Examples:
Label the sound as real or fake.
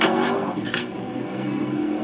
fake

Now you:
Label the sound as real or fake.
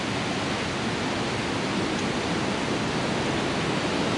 real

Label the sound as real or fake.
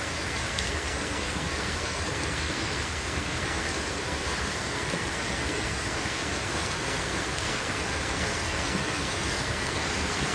fake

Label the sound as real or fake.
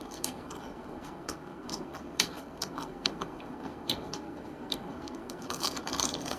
fake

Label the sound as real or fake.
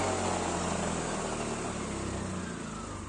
real